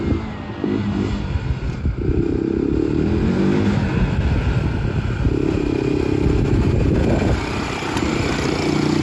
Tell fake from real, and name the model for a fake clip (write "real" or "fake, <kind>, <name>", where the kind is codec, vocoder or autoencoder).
real